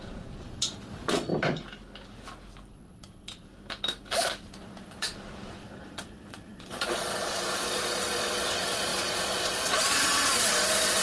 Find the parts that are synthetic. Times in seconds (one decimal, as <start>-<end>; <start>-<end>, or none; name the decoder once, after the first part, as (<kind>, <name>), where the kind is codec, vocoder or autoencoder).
0.0-1.3 (vocoder, Vocos); 2.7-3.5; 4.4-11.0